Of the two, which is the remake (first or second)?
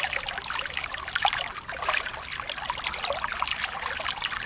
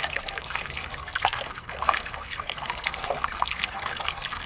second